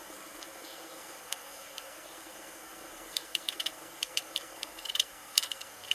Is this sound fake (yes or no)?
yes